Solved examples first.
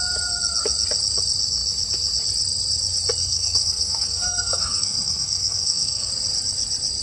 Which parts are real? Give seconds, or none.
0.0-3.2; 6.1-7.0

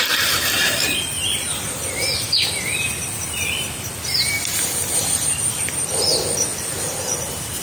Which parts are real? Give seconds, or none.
6.5-7.6

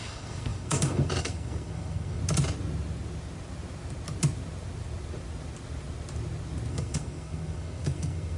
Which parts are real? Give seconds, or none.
2.2-6.7

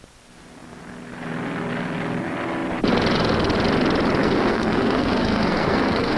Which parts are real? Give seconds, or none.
0.0-4.2

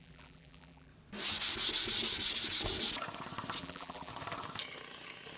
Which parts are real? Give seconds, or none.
0.9-3.6; 4.1-5.4

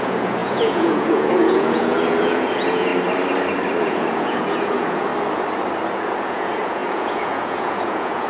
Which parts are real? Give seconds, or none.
2.9-3.8; 5.1-5.9

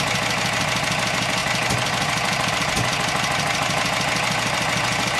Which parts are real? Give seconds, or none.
0.0-5.2